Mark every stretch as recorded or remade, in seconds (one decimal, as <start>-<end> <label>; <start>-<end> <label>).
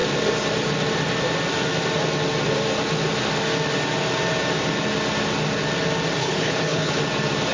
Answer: 0.0-6.2 recorded; 6.2-7.0 remade; 7.0-7.5 recorded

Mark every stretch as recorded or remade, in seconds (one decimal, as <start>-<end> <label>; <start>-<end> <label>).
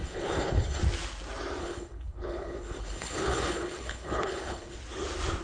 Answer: 0.0-0.8 remade; 0.8-1.6 recorded; 1.6-4.8 remade; 4.8-5.4 recorded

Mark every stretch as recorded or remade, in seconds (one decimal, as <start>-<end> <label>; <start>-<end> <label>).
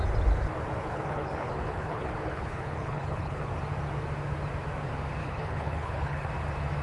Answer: 0.0-0.8 recorded; 0.8-3.5 remade; 3.5-5.2 recorded; 5.2-6.3 remade; 6.3-6.8 recorded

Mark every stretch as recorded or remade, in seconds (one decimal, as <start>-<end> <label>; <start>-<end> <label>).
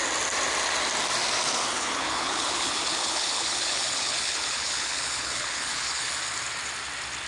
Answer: 0.0-1.7 recorded; 1.7-6.1 remade; 6.1-7.3 recorded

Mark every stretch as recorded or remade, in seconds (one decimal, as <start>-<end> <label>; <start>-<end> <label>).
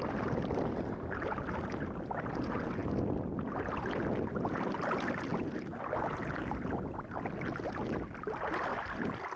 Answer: 0.0-9.4 recorded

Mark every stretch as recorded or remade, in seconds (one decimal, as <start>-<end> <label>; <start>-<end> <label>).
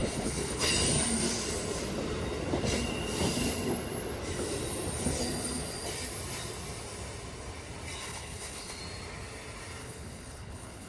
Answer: 0.0-0.7 remade; 0.7-8.0 recorded; 8.0-8.8 remade; 8.8-9.8 recorded; 9.8-10.9 remade